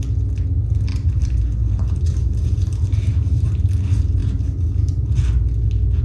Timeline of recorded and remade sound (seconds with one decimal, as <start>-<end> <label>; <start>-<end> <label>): 0.0-0.9 recorded; 0.9-3.6 remade; 3.6-4.2 recorded; 4.2-5.1 remade; 5.1-6.0 recorded